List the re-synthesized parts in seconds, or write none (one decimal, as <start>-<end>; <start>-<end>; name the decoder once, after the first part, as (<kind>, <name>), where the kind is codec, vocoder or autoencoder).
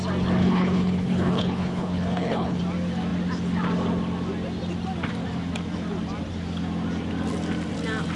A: 0.4-2.6 (codec, HILCodec)